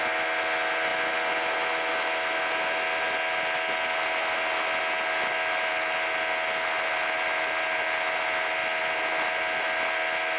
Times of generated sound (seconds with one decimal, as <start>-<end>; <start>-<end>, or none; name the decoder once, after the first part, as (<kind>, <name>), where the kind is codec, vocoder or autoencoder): none